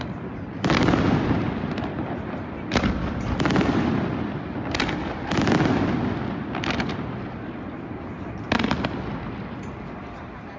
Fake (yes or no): no